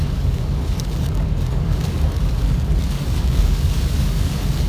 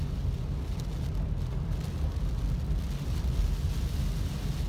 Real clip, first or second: second